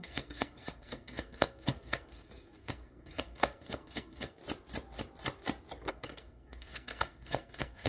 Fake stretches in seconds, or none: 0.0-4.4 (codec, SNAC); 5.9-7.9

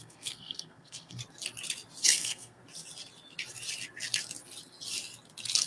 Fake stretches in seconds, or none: 0.0-1.2 (codec, SNAC); 2.0-2.6

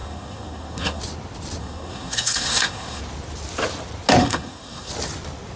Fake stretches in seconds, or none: 0.0-1.0 (codec, SNAC); 1.6-3.0; 4.2-4.9

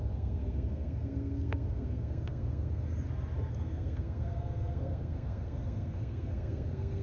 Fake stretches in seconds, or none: 0.0-2.9 (codec, SNAC); 3.5-7.0

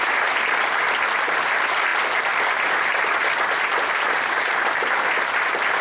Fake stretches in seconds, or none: none

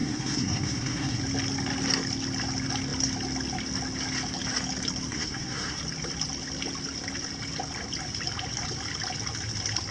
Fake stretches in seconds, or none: 0.0-1.2 (codec, SNAC); 5.1-5.8